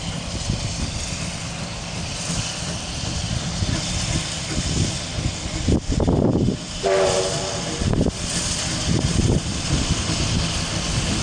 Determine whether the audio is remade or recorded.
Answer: recorded